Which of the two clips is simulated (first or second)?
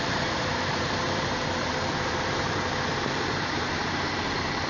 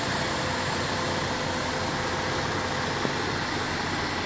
first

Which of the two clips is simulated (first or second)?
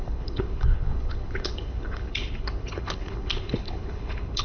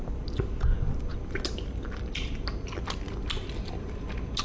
first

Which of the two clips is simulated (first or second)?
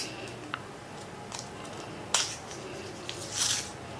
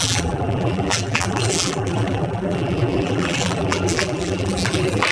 second